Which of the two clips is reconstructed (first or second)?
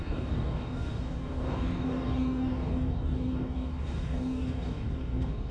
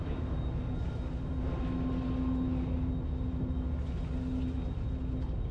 first